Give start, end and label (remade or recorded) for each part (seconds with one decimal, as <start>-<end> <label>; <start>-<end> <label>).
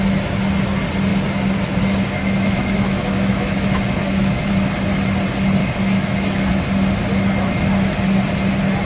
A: 0.0-2.2 recorded; 2.2-4.5 remade; 4.5-5.6 recorded; 5.6-6.5 remade; 6.5-8.9 recorded